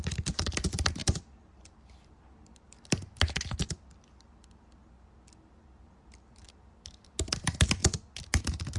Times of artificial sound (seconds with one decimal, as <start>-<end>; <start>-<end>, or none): none